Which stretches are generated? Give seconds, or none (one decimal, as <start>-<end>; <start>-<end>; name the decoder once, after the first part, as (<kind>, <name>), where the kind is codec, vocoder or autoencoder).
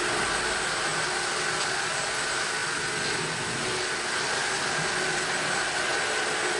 none